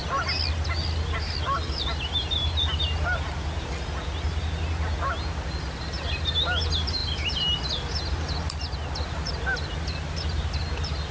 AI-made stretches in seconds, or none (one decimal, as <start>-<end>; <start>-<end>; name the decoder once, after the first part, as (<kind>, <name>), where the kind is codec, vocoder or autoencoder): none